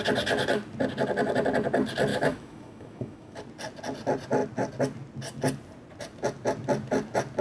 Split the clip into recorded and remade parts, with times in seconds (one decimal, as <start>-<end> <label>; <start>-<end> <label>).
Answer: 0.0-2.1 recorded; 2.1-3.4 remade; 3.4-7.4 recorded